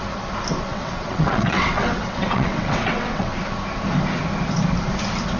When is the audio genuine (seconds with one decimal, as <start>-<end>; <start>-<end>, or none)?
0.0-0.7; 3.3-5.4